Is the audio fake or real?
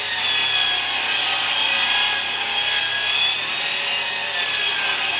real